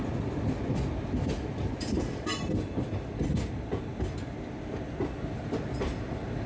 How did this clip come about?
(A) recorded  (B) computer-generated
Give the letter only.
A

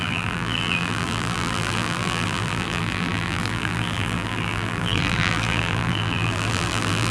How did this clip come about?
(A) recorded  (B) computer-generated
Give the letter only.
B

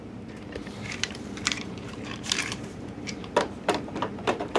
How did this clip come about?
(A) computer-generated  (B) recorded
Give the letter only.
A